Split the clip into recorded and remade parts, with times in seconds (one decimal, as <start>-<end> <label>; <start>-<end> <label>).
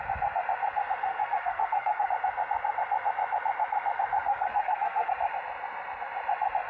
0.0-1.1 recorded; 1.1-2.1 remade; 2.1-4.3 recorded; 4.3-5.1 remade; 5.1-6.7 recorded